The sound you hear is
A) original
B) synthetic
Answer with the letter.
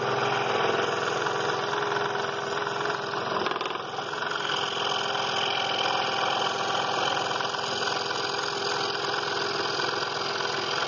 A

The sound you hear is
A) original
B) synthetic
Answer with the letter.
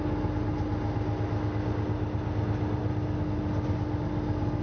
A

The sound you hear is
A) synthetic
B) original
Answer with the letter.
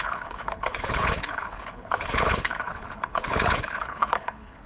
A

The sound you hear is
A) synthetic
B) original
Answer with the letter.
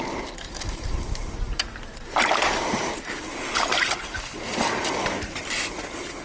A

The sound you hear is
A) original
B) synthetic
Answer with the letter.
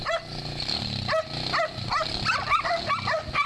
A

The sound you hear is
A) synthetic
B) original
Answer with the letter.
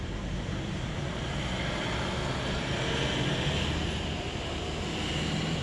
B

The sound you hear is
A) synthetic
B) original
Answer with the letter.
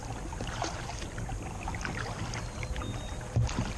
B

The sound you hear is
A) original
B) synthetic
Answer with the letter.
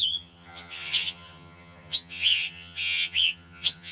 B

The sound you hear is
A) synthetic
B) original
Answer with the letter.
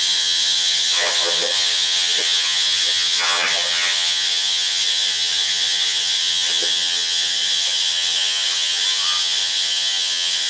A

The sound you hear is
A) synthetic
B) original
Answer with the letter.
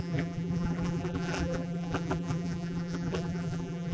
A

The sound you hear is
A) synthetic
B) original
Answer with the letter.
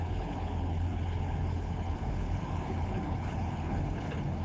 A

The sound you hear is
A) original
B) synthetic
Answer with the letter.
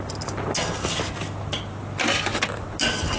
A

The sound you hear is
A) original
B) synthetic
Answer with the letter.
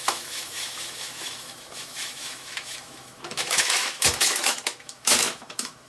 B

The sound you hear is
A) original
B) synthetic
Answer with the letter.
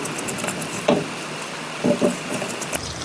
A